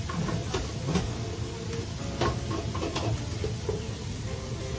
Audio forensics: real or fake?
real